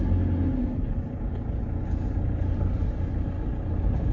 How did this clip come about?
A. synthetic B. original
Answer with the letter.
B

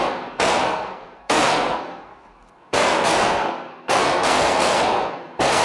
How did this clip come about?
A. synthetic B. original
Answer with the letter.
A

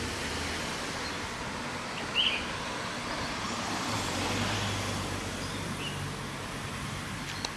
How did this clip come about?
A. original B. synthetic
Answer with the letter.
A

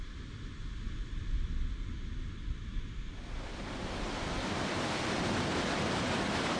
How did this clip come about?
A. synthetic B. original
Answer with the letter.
B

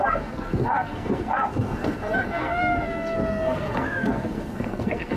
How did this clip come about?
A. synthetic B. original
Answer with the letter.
A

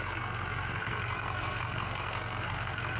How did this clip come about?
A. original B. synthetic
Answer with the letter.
B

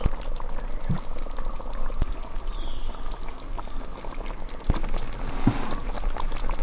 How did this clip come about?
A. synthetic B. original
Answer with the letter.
B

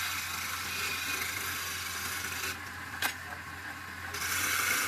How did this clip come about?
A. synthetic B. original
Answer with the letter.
B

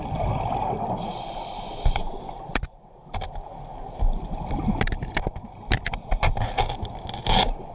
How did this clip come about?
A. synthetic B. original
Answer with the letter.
B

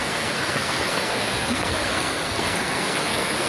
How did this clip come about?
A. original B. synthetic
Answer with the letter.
B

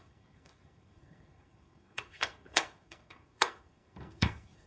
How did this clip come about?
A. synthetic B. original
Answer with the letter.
A